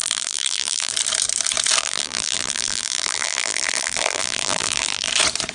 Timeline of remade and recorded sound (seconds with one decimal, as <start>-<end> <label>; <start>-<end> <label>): 0.0-0.9 remade; 0.9-1.8 recorded; 1.8-5.1 remade; 5.1-5.5 recorded